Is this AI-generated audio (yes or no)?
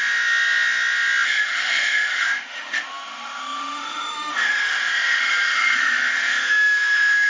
yes